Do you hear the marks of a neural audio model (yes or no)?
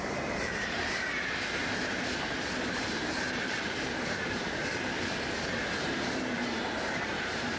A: yes